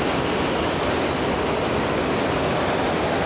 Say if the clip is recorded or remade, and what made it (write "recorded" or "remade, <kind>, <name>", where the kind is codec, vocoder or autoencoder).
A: recorded